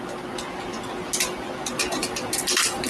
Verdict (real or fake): real